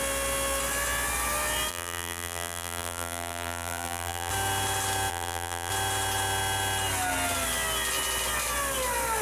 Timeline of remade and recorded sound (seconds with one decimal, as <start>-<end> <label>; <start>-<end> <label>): 0.0-1.7 recorded; 1.7-4.3 remade; 4.3-5.1 recorded; 5.1-5.7 remade; 5.7-9.2 recorded